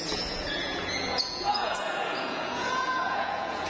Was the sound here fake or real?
fake